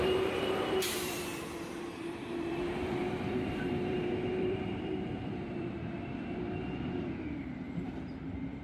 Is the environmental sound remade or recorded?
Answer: remade